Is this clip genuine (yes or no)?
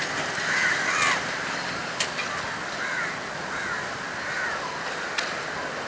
yes